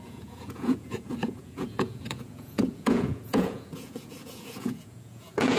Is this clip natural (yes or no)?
no